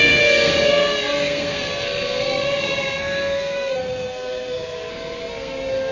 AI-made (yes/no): yes